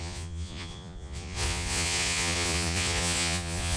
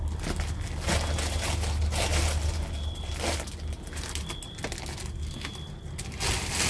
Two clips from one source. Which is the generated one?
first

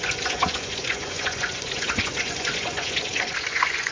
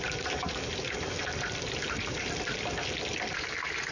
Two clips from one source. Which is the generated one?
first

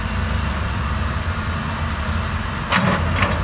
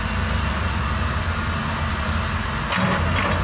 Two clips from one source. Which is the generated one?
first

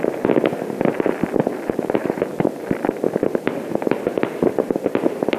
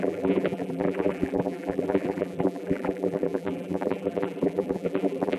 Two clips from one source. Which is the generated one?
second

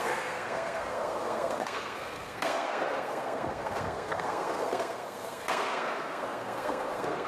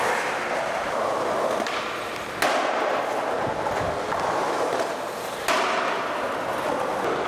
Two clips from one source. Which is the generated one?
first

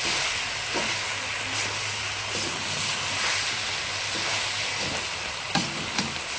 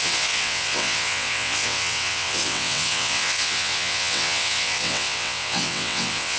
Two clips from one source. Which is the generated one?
second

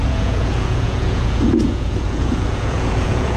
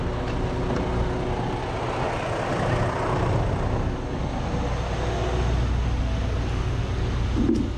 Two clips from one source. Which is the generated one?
first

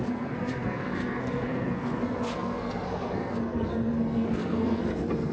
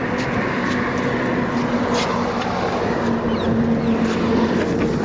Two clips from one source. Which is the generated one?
first